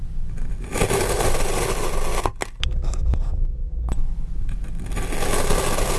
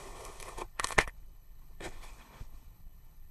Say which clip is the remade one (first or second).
second